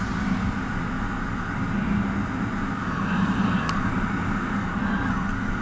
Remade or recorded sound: recorded